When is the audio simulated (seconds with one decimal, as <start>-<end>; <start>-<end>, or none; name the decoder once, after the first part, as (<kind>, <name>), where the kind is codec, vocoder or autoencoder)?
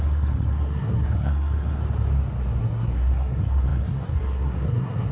0.0-1.8 (codec, SNAC); 2.6-5.1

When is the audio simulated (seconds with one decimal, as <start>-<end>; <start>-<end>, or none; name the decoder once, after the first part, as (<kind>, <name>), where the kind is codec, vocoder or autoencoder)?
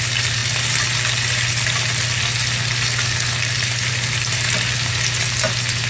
none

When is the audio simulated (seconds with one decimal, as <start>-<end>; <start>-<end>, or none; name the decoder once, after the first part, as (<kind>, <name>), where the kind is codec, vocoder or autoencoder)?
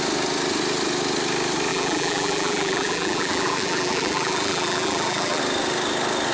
1.7-5.4 (vocoder, BigVGAN v2)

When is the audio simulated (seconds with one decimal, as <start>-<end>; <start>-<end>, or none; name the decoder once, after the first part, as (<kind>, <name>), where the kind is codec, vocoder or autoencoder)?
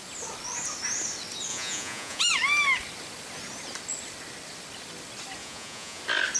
1.5-2.2 (vocoder, Vocos); 5.4-6.0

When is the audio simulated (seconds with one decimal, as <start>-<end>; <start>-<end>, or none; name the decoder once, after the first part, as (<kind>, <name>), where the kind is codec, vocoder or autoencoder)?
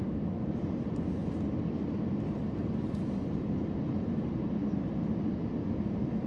none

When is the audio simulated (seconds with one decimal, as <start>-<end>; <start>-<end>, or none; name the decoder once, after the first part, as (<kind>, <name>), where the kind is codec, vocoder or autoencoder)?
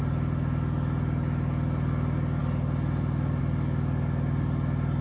none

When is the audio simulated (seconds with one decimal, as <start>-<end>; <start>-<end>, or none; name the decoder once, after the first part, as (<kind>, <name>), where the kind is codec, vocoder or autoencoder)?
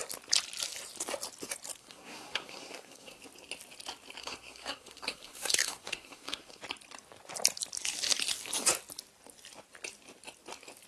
1.8-3.2 (codec, SNAC); 4.2-6.6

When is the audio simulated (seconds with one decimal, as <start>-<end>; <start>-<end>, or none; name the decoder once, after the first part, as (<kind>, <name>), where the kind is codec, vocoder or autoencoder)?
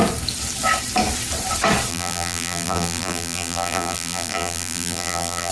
1.9-5.5 (vocoder, BigVGAN v2)